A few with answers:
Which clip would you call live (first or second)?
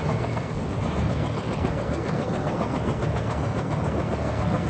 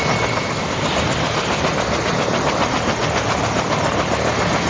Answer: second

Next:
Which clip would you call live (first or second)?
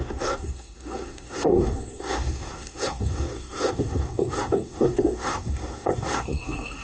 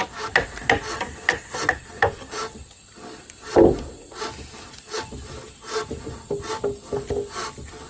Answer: second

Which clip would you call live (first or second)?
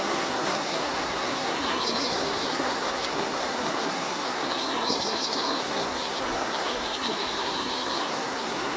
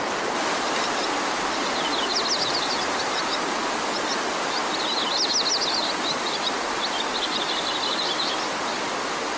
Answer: second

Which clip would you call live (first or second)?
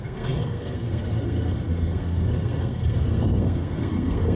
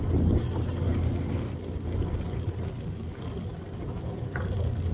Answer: second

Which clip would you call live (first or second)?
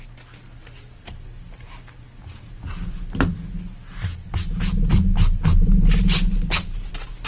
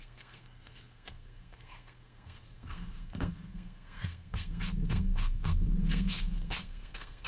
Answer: first